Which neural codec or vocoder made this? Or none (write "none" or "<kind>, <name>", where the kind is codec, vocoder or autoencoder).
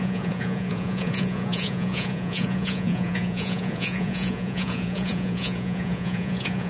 vocoder, Vocos